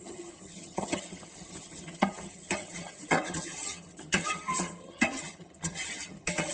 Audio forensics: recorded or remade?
remade